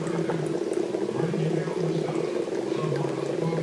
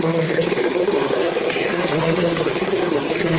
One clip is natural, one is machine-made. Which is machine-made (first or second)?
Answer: second